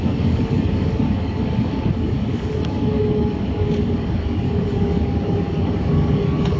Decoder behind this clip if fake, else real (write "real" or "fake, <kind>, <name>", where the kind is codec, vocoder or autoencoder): fake, codec, DAC